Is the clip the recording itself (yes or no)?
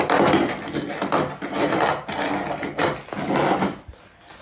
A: yes